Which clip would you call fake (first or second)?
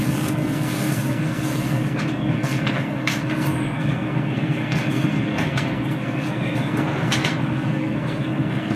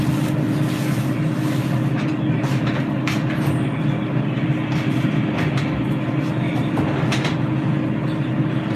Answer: first